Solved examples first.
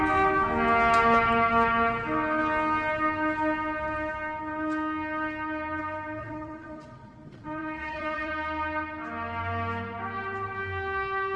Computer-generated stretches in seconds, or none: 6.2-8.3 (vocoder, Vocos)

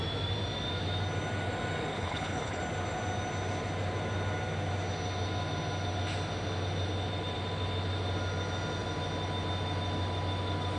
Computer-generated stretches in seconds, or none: 1.9-2.6 (codec, HILCodec)

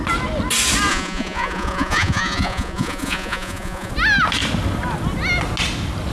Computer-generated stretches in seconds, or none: 0.9-3.9 (vocoder, Vocos)

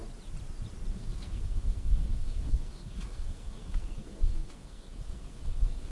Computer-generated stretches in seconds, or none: 0.9-5.9 (codec, SNAC)

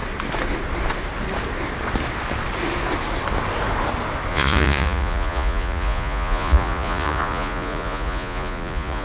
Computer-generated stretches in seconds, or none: 4.3-9.0 (vocoder, Vocos)

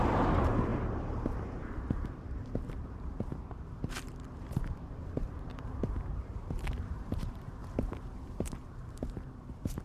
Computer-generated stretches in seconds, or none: 0.0-9.8 (vocoder, BigVGAN v2)

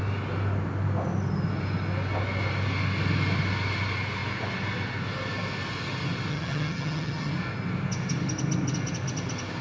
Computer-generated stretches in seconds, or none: 6.3-7.3 (vocoder, HiFi-GAN)

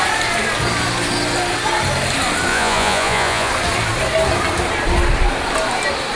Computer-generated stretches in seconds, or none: 2.5-3.5 (vocoder, Vocos)